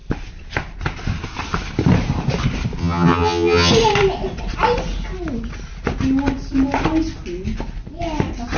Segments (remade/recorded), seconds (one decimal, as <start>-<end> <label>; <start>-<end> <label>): 0.0-2.8 recorded; 2.8-3.7 remade; 3.7-8.6 recorded